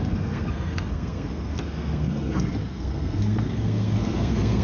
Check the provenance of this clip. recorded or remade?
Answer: remade